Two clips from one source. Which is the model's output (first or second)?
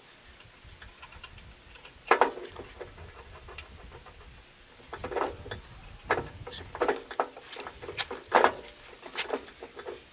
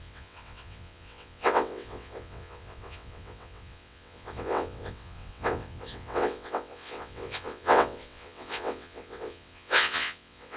second